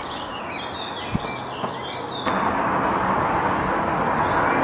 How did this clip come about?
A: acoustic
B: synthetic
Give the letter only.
A